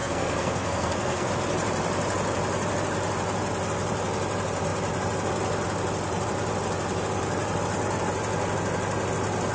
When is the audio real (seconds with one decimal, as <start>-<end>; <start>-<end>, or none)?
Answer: 1.3-9.5